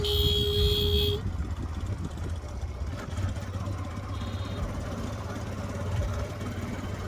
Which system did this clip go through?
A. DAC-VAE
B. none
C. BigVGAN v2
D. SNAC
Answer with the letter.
B